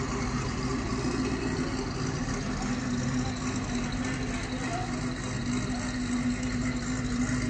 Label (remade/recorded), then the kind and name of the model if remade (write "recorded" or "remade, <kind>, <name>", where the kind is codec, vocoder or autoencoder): recorded